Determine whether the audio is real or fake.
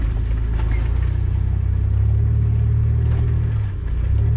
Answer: real